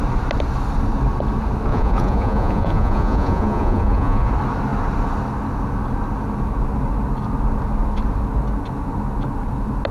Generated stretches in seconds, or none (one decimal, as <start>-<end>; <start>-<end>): 1.7-4.3